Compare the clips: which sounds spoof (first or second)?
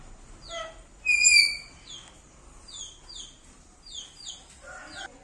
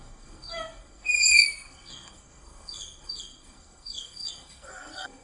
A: second